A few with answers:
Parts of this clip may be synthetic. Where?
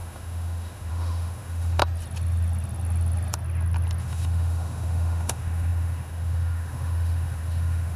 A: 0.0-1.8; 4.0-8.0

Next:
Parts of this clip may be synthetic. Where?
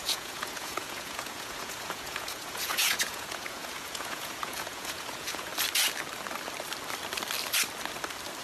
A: 0.0-5.5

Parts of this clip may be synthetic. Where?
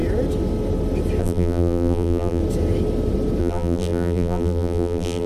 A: 1.2-2.4; 3.4-5.3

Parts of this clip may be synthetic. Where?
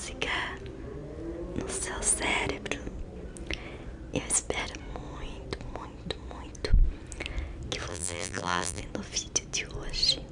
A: 7.9-8.8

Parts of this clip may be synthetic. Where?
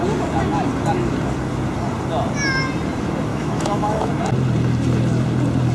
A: 3.3-4.1